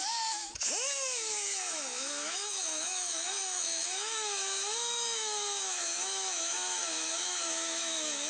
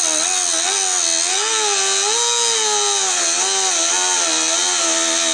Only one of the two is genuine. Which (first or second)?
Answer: second